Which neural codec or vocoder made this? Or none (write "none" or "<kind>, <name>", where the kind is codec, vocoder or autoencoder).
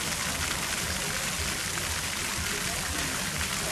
none